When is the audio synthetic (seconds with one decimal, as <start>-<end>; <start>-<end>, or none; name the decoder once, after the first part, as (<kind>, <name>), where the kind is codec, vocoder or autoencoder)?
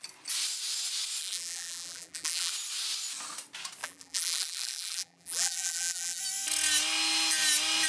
1.2-2.5 (vocoder, BigVGAN v2); 3.8-6.2